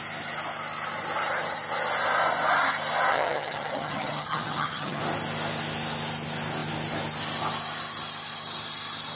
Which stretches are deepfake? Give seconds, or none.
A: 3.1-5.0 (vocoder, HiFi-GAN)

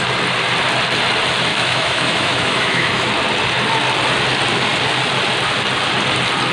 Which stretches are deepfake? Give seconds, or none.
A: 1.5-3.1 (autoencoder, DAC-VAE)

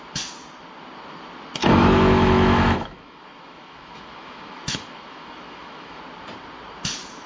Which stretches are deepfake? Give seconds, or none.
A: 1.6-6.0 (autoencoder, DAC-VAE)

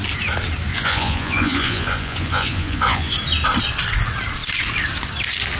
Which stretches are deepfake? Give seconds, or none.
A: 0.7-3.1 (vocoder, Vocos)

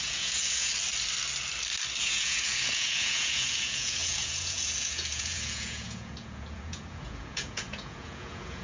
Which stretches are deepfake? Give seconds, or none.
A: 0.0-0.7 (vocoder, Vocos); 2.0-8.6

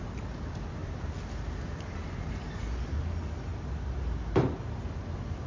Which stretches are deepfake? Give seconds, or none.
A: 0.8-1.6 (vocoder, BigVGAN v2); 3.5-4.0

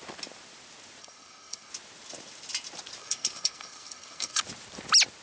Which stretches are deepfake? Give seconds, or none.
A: 1.0-1.7 (codec, SNAC); 3.0-4.4

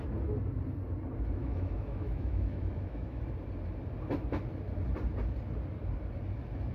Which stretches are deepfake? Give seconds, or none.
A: 1.4-3.2 (autoencoder, DAC-VAE)